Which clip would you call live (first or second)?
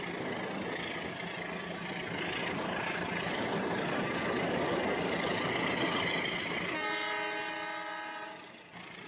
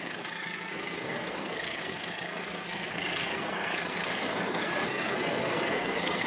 first